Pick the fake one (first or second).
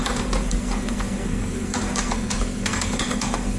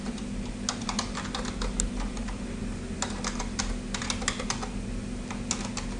first